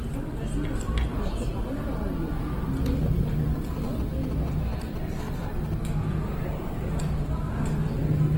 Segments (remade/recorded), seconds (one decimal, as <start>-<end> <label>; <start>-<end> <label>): 0.0-1.1 recorded; 1.1-2.1 remade; 2.1-8.4 recorded

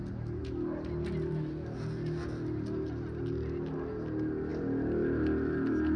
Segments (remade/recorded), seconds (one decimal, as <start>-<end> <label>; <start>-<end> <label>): 0.0-6.0 recorded

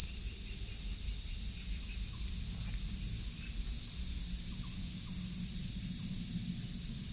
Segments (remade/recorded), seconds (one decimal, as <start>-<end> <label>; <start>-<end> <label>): 0.0-7.1 recorded

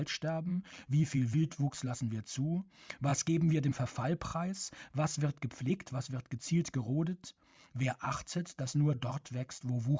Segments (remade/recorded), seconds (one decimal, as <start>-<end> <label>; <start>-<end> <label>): 0.0-0.5 recorded; 0.5-2.0 remade; 2.0-7.5 recorded; 7.5-9.6 remade; 9.6-10.0 recorded